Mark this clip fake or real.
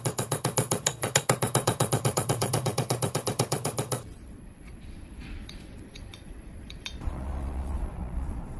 fake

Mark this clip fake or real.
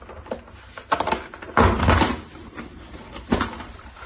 real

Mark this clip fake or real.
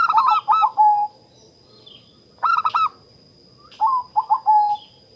real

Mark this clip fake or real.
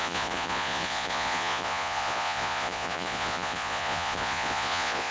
fake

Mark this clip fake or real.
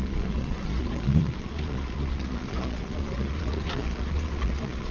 fake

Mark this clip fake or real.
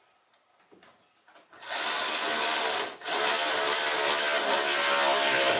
real